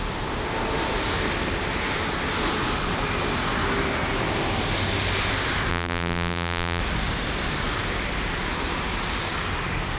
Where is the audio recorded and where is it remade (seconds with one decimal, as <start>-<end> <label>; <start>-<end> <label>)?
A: 0.0-5.7 recorded; 5.7-6.8 remade; 6.8-10.0 recorded